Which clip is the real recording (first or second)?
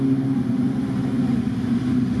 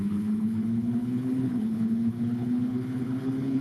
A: first